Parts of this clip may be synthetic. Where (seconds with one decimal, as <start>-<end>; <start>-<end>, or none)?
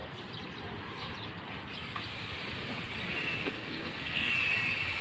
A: 3.4-4.3